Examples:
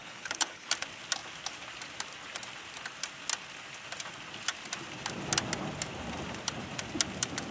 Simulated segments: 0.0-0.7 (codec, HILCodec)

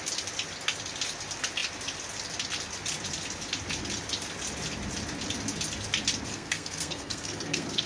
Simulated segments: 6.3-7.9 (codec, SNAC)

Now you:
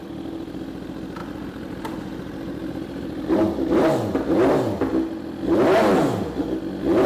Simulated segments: 1.2-3.3 (vocoder, BigVGAN v2)

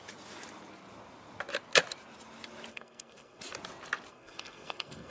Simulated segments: 2.7-3.4 (codec, SNAC); 4.1-5.1

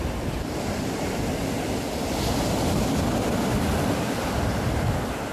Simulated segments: none

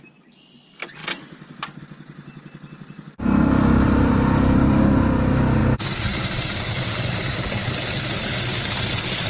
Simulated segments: 5.6-7.1 (vocoder, BigVGAN v2); 7.6-8.9